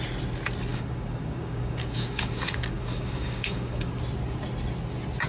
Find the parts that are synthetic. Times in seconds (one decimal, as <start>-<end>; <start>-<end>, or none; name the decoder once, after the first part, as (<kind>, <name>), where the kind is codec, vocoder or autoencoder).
0.7-3.9 (codec, DAC)